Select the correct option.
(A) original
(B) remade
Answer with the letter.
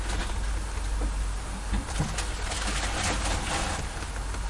A